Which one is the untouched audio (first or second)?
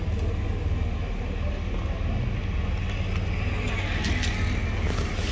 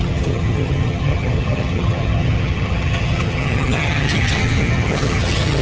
first